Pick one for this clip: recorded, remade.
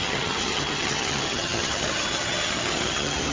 remade